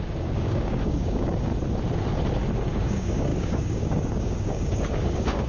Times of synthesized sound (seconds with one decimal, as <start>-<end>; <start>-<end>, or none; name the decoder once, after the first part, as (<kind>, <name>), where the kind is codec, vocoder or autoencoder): 0.0-1.5 (codec, DAC); 2.8-5.5